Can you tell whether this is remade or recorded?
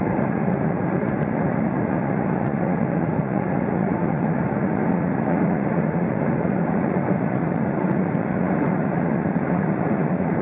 remade